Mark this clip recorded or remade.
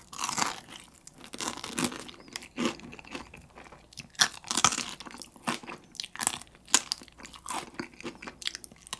recorded